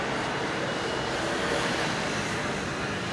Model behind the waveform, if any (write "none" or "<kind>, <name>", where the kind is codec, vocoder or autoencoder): none